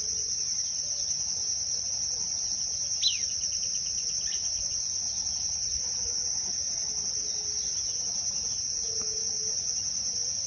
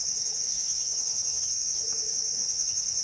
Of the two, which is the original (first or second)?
first